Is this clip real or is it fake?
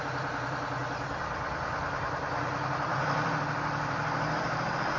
fake